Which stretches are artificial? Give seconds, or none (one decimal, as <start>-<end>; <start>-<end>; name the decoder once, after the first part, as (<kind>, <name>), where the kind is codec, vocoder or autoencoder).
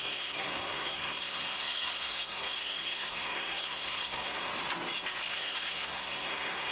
0.0-4.5 (codec, SNAC); 5.3-6.7